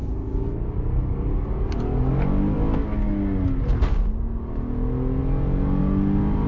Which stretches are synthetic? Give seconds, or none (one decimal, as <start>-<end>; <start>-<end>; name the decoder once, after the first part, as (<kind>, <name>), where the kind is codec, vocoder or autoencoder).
none